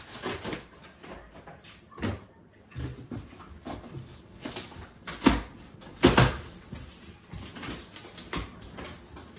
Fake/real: real